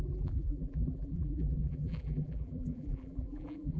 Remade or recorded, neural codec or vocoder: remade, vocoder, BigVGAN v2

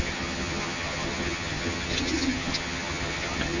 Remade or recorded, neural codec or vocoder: remade, vocoder, HiFi-GAN